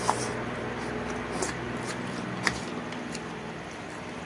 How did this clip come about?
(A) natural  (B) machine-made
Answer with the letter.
A